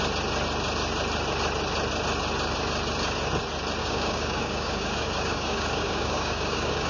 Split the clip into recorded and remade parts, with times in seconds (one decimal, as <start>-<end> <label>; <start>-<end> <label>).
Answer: 0.0-3.8 recorded; 3.8-6.9 remade